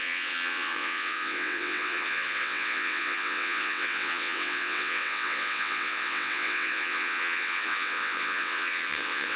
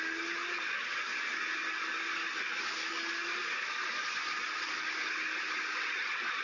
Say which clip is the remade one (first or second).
first